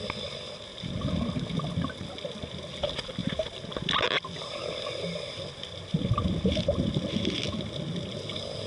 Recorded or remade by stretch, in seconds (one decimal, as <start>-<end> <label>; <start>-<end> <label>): 0.0-8.7 recorded